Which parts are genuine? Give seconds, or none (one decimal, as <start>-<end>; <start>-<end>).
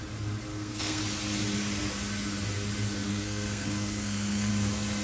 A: 0.0-0.5; 1.0-3.1; 4.5-5.0